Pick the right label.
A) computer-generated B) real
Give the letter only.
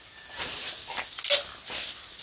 B